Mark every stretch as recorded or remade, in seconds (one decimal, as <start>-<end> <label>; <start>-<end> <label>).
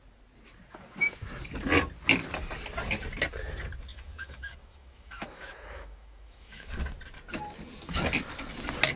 0.0-3.9 recorded; 3.9-6.7 remade; 6.7-9.0 recorded